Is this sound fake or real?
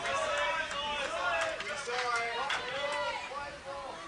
fake